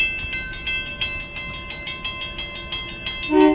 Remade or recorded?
recorded